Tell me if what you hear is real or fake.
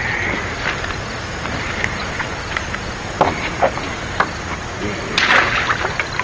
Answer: real